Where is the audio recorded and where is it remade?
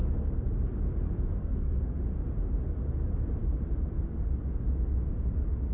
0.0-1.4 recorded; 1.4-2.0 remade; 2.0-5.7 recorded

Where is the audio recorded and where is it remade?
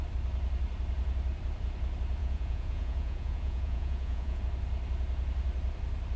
0.0-2.2 recorded; 2.2-4.4 remade; 4.4-6.2 recorded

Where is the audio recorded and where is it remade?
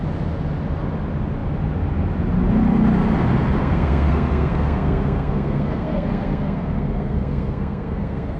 0.0-3.6 recorded; 3.6-8.4 remade